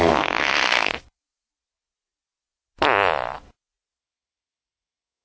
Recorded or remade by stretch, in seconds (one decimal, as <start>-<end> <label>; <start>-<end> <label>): 0.0-0.9 remade; 0.9-4.0 recorded; 4.0-5.2 remade